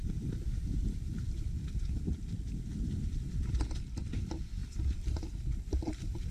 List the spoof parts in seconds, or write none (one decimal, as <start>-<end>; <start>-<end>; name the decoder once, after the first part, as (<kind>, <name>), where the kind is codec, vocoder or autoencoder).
0.0-6.3 (vocoder, BigVGAN v2)